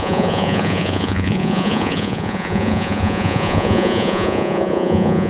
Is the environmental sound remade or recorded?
remade